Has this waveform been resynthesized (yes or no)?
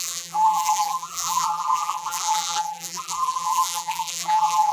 yes